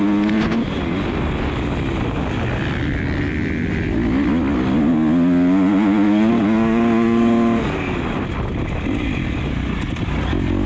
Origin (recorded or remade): recorded